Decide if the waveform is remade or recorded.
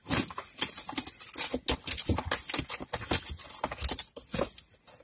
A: recorded